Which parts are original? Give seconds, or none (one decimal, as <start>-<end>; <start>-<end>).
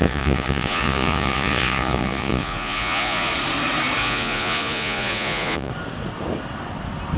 3.3-4.0; 5.7-7.2